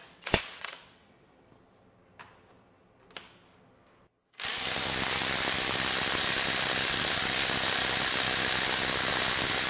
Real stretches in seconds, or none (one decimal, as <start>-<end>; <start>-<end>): 1.4-9.7